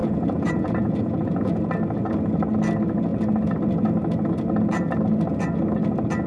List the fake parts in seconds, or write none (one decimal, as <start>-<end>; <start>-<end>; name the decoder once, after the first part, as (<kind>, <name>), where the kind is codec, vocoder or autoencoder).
0.0-1.6 (vocoder, Vocos)